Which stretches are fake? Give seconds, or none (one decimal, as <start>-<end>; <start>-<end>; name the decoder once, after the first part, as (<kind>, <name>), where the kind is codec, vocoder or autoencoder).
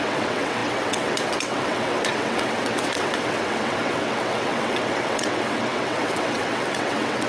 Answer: 0.0-7.3 (vocoder, WaveNeXt)